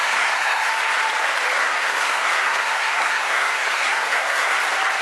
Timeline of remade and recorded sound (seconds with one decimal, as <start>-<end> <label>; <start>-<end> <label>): 0.0-0.7 remade; 0.7-1.6 recorded; 1.6-4.6 remade; 4.6-5.0 recorded